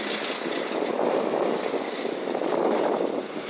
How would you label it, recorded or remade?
recorded